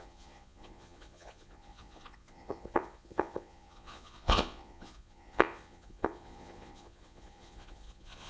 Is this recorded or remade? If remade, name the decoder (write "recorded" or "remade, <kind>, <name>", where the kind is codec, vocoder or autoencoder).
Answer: remade, vocoder, Vocos